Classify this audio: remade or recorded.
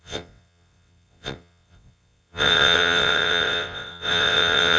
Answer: remade